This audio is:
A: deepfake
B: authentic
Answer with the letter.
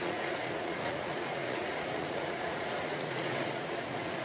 A